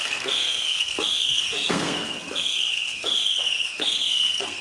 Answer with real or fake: fake